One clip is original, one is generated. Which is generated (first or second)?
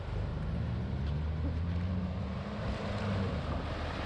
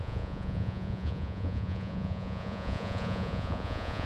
second